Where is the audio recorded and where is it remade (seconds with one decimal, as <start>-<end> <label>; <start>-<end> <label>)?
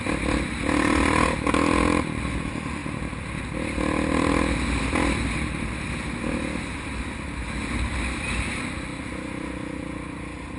0.0-2.8 recorded; 2.8-3.4 remade; 3.4-10.6 recorded